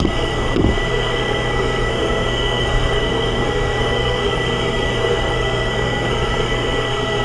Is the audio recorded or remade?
remade